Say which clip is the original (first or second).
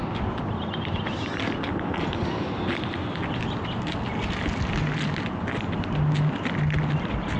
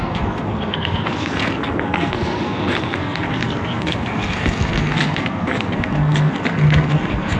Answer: first